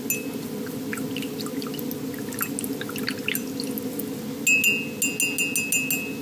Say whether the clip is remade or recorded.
recorded